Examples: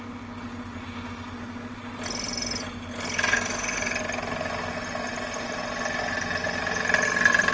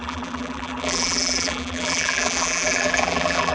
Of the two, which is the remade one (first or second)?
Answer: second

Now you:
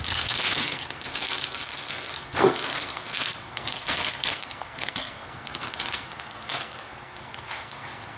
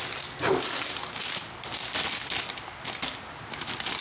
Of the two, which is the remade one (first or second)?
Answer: first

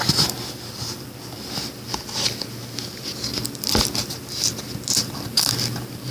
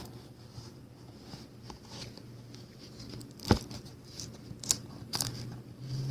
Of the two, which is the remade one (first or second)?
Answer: second